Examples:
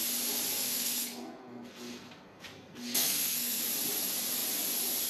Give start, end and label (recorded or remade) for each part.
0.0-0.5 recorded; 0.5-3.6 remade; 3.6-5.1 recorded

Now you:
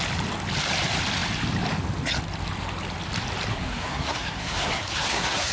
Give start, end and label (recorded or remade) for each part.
0.0-3.5 recorded; 3.5-5.5 remade

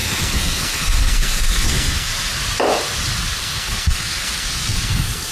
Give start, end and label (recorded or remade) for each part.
0.0-2.1 remade; 2.1-3.3 recorded; 3.3-5.3 remade